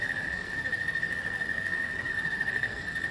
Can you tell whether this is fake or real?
fake